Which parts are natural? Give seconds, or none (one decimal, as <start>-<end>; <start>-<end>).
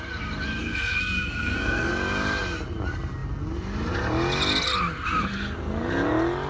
0.0-0.6; 1.9-6.5